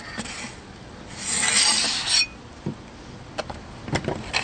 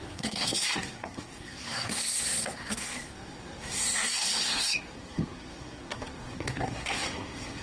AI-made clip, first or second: second